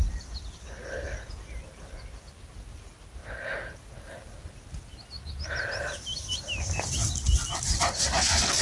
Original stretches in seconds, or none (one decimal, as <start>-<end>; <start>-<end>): 0.0-8.6